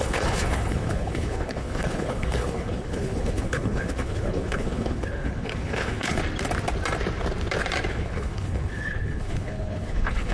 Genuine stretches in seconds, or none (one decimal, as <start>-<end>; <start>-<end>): 6.2-7.9